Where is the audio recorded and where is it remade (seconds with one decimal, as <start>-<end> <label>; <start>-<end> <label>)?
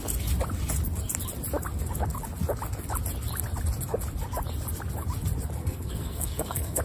0.0-5.6 recorded; 5.6-6.8 remade